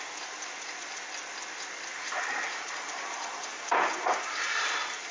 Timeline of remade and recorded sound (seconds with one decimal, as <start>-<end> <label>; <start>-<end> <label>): 0.0-1.9 recorded; 1.9-5.1 remade